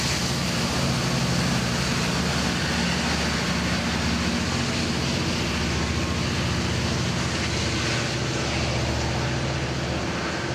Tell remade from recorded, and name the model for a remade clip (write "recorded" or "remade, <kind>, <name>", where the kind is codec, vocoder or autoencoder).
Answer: recorded